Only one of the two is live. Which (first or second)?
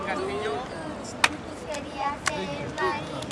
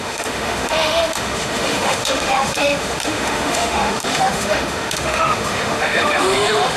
first